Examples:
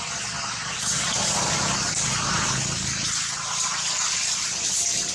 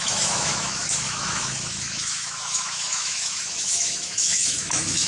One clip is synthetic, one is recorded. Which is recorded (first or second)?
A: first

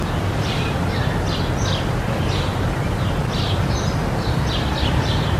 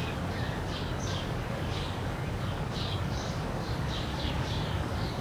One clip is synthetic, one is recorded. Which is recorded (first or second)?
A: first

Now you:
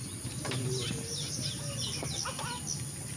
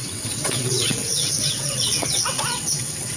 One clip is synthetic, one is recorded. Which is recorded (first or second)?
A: first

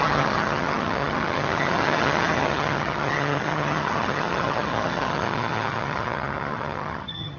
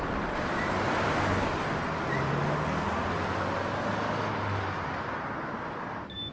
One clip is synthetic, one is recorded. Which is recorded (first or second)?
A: second